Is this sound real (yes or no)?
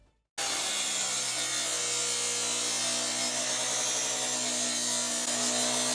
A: yes